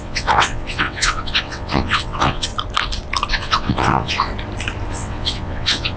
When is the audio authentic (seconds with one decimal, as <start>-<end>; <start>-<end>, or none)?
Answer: 2.5-3.3; 4.3-4.9